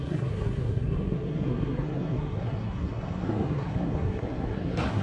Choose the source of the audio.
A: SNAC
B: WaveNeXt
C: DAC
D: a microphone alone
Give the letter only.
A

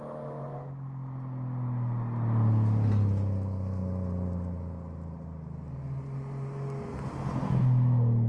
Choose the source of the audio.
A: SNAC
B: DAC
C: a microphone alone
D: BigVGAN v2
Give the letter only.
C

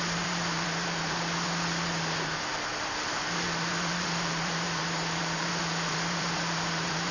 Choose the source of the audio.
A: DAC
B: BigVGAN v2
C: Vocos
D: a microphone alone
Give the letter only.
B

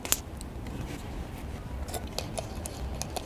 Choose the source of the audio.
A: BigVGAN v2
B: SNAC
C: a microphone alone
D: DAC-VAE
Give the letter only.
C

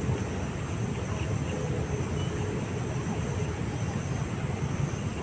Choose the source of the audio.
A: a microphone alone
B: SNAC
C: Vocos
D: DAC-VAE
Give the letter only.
A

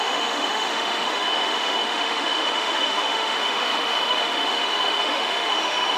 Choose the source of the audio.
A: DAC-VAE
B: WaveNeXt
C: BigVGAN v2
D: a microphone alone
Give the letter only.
A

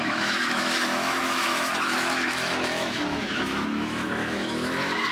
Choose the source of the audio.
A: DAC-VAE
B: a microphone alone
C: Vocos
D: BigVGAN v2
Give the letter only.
A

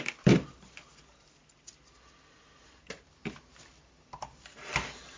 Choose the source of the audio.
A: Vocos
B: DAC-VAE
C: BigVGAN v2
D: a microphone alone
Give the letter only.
D